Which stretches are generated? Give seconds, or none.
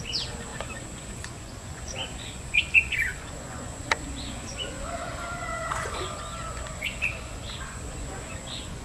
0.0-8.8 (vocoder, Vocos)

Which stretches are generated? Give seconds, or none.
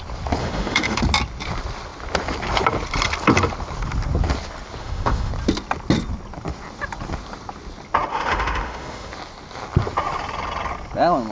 0.4-1.0 (autoencoder, DAC-VAE); 4.8-5.3; 8.1-9.1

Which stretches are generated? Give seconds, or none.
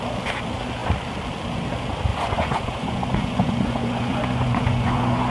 2.1-5.3 (vocoder, Vocos)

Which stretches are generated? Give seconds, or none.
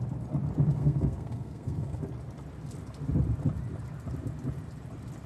0.7-2.0 (codec, SNAC)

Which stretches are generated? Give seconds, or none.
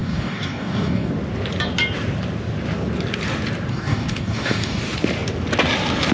0.0-1.1 (codec, DAC); 3.7-4.8